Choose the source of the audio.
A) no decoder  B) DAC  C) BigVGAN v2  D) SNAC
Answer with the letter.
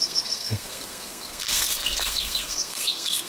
D